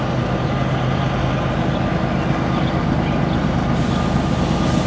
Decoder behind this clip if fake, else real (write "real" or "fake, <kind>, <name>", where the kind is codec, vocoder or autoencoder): real